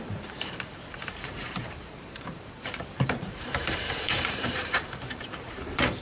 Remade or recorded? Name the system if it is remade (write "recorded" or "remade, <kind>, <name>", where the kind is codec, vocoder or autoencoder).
remade, vocoder, BigVGAN v2